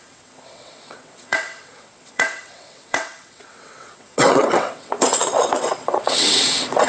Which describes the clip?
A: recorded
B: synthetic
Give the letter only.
B